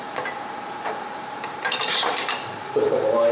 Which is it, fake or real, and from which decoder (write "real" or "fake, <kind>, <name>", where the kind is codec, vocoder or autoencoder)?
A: fake, vocoder, BigVGAN v2